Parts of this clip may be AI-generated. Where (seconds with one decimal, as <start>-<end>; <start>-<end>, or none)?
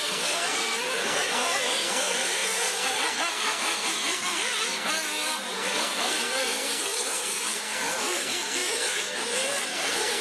0.0-10.2